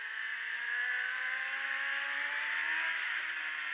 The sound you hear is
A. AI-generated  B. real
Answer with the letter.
B